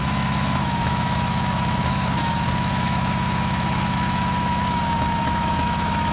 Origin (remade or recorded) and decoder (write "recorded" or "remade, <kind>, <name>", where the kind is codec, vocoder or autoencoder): remade, autoencoder, DAC-VAE